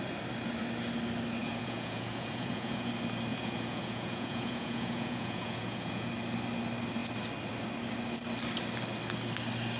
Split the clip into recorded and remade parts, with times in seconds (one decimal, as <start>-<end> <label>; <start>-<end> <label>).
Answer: 0.0-1.4 recorded; 1.4-2.9 remade; 2.9-3.3 recorded; 3.3-6.1 remade; 6.1-9.8 recorded